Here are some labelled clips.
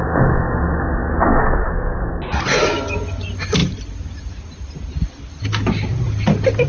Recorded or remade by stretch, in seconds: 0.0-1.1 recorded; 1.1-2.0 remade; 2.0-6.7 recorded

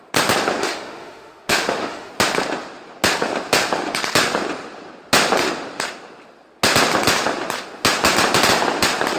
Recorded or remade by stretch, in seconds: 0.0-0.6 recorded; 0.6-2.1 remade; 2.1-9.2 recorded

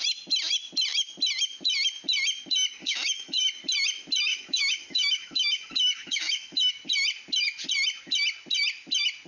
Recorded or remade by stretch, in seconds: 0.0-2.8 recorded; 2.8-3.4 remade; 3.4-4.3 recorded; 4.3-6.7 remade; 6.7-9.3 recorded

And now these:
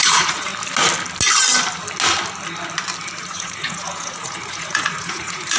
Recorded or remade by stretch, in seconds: 0.0-0.5 remade; 0.5-3.2 recorded; 3.2-5.6 remade